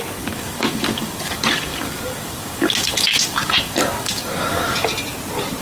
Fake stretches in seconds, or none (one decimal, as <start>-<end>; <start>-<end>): 0.0-4.9